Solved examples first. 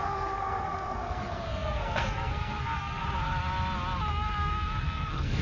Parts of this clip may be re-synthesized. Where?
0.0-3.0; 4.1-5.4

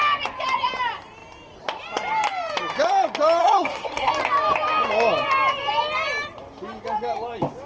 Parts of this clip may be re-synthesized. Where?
3.4-4.1

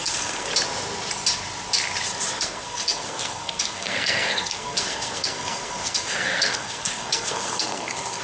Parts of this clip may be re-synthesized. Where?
0.0-0.5; 2.4-8.2

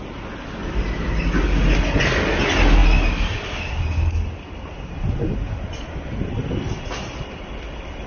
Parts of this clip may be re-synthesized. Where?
none

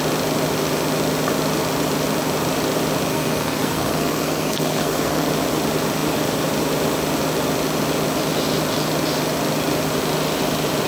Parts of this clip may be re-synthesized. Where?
3.1-5.3

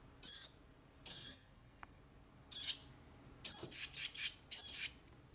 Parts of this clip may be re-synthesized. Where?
1.1-2.0

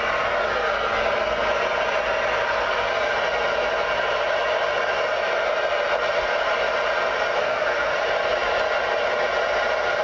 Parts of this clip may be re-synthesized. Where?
7.4-8.0